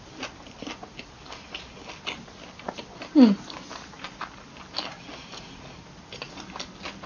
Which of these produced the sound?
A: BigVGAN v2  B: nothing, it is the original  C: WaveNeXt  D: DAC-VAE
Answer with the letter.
B